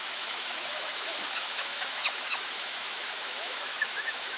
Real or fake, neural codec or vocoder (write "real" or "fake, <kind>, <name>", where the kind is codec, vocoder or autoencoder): fake, autoencoder, DAC-VAE